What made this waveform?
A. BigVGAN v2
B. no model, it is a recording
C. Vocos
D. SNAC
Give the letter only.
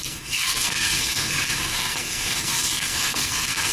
D